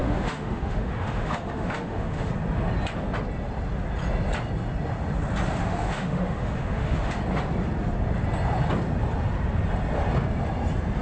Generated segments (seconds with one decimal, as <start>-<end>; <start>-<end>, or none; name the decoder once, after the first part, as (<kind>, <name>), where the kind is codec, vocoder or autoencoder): 0.0-2.3 (autoencoder, DAC-VAE); 5.6-7.2